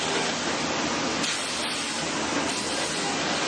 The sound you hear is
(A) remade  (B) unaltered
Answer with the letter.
B